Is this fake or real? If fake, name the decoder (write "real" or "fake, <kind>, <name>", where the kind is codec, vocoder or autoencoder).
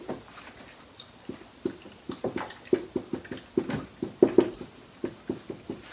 real